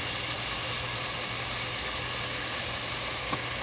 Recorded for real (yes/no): yes